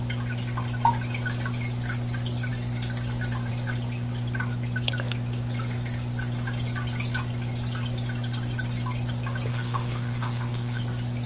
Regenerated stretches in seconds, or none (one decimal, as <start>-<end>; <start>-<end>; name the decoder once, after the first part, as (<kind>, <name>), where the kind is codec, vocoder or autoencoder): 9.5-10.8 (autoencoder, DAC-VAE)